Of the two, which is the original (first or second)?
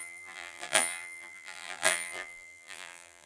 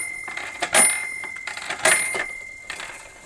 second